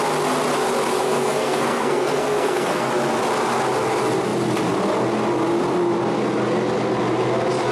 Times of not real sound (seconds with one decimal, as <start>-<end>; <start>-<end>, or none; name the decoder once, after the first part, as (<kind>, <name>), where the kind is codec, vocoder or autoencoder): 0.9-2.9 (codec, SNAC)